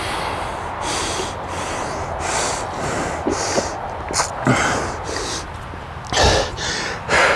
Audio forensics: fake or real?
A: real